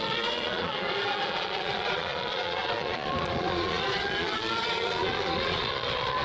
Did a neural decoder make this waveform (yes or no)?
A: yes